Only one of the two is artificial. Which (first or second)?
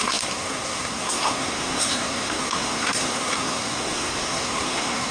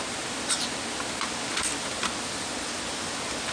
first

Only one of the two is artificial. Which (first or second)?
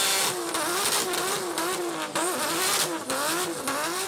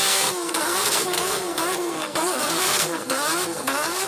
second